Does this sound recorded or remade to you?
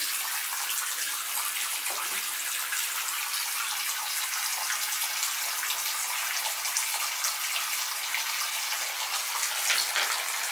recorded